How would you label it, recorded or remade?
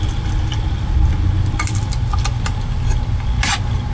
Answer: recorded